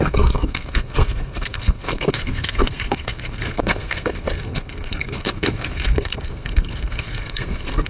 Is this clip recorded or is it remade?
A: remade